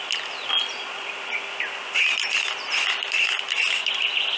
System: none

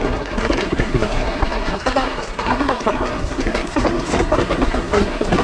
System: codec, SNAC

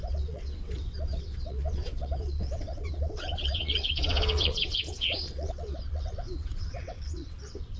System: vocoder, WaveNeXt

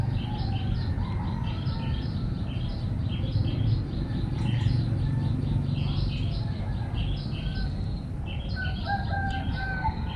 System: none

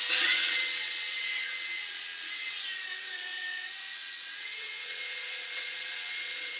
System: vocoder, WaveNeXt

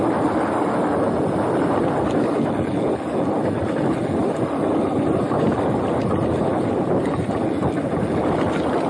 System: none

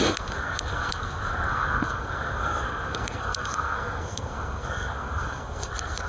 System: codec, SNAC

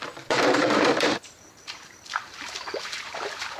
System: vocoder, BigVGAN v2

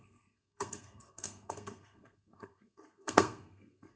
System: codec, SNAC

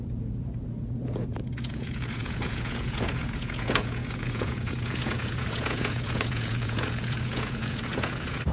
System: vocoder, Vocos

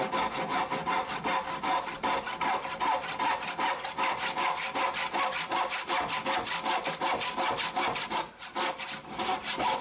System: none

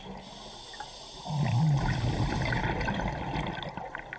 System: none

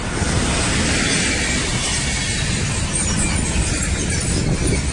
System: none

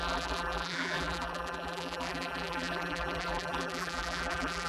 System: vocoder, BigVGAN v2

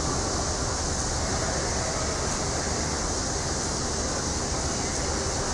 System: none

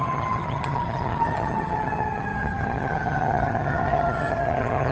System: vocoder, HiFi-GAN